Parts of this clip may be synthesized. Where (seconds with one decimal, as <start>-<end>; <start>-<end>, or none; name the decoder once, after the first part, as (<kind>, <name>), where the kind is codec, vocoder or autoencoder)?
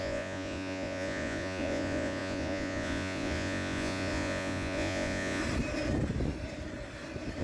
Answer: 0.0-5.4 (vocoder, Vocos)